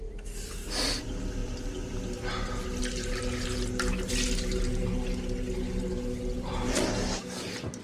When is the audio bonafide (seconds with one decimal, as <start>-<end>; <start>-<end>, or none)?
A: 0.0-7.8